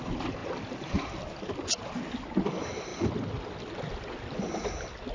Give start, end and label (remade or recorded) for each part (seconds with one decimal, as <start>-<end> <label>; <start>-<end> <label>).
0.0-5.1 recorded